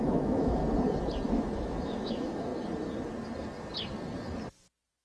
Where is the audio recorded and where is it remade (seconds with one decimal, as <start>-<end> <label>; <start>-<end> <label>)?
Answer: 0.0-0.6 remade; 0.6-1.3 recorded; 1.3-2.5 remade; 2.5-5.0 recorded